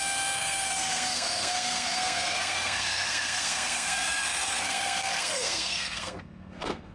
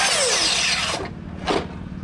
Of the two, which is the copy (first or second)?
first